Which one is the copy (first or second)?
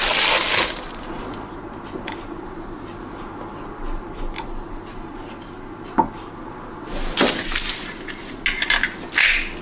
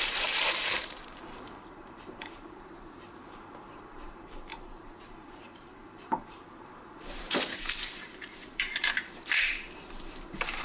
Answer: second